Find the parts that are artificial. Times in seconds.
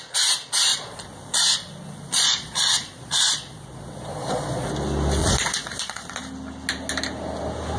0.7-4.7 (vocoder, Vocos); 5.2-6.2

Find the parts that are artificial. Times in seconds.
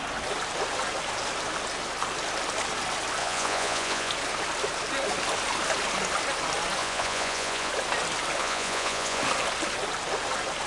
3.2-4.1 (vocoder, Vocos); 6.8-7.7; 8.4-9.2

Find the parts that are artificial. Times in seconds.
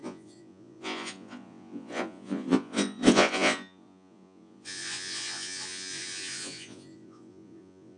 0.0-8.0 (vocoder, Vocos)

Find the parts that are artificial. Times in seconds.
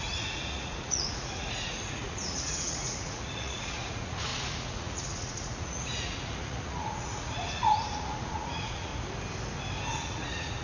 0.0-8.9 (vocoder, Vocos); 9.9-10.6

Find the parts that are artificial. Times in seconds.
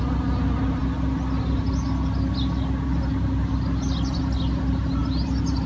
none